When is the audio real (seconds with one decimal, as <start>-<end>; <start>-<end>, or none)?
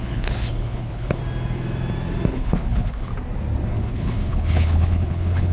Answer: 1.2-2.3; 3.1-3.8